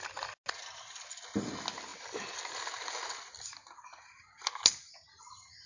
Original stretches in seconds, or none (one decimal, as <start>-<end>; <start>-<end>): 0.0-5.7